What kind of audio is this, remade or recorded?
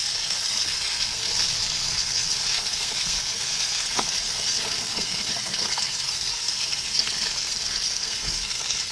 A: remade